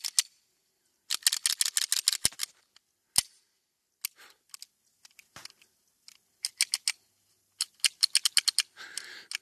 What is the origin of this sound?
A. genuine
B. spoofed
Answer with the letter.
A